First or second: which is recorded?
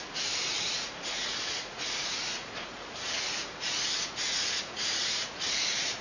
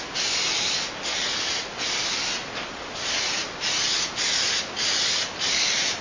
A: second